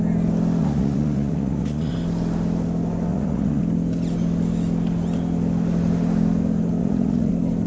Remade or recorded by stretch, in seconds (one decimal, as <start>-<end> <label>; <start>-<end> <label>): 0.0-0.6 recorded; 0.6-1.9 remade; 1.9-3.1 recorded; 3.1-3.6 remade; 3.6-6.8 recorded; 6.8-7.3 remade; 7.3-7.7 recorded